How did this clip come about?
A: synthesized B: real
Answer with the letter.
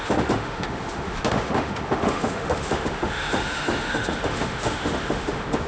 A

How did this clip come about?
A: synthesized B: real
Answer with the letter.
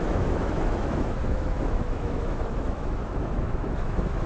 A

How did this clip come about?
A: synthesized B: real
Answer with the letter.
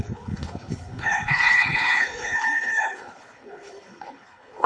A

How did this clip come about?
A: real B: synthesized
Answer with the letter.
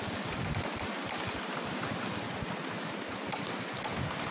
A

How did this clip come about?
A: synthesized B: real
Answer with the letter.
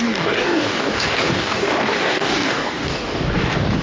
A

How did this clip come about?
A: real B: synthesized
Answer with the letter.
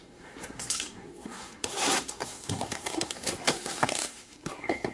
B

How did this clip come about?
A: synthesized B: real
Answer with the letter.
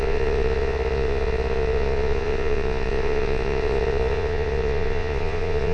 A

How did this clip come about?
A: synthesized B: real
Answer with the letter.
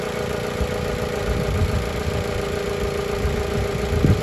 B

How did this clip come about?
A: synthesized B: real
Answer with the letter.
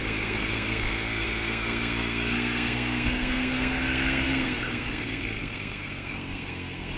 A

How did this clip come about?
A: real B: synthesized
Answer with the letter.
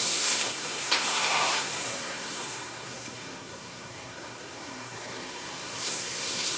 B